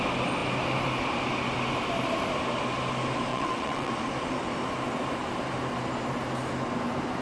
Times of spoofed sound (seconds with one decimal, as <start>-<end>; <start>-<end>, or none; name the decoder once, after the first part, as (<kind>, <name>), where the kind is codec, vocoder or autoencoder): 3.3-3.9 (vocoder, WaveNeXt)